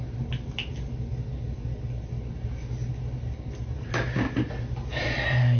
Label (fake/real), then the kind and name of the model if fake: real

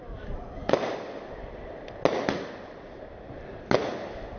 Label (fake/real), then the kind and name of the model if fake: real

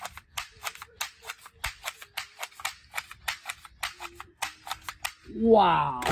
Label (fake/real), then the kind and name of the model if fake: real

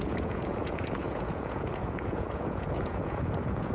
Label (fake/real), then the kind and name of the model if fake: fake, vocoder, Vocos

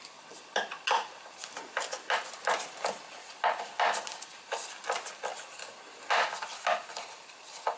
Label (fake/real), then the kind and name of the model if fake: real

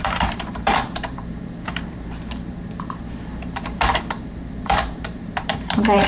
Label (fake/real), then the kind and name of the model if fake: fake, vocoder, BigVGAN v2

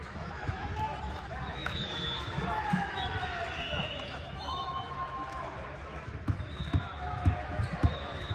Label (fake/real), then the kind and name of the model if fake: fake, autoencoder, DAC-VAE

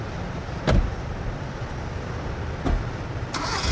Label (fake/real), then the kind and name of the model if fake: real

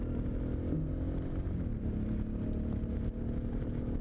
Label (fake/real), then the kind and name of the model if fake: real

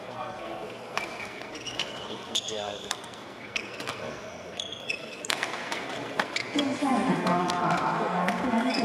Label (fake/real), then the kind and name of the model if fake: fake, codec, SNAC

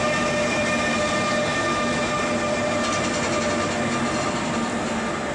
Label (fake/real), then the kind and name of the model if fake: real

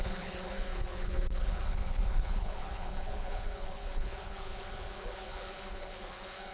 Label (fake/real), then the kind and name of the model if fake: fake, codec, HILCodec